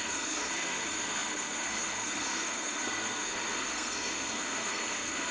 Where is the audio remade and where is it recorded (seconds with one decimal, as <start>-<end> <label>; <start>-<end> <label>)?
0.0-5.3 remade